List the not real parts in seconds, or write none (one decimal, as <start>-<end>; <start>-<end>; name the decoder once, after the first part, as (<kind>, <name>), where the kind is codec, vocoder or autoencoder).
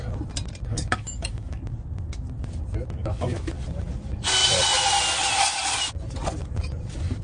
0.7-1.6 (autoencoder, DAC-VAE); 3.0-3.5